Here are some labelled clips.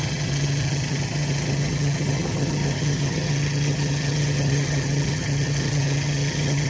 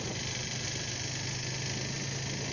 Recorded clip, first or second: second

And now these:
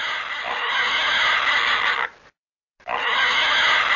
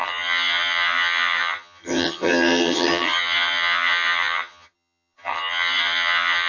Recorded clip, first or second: first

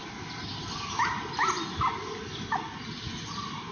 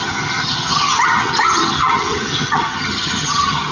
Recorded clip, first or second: first